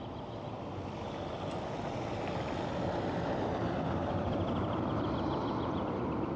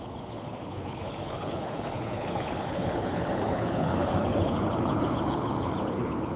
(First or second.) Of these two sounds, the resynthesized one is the second